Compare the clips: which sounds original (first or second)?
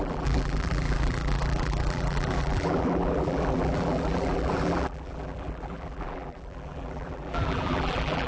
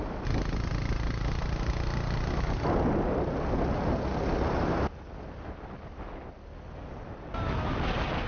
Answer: second